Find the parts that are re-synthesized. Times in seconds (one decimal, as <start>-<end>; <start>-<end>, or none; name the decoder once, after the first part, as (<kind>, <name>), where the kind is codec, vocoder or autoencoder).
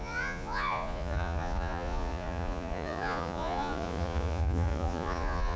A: 0.0-5.6 (vocoder, Vocos)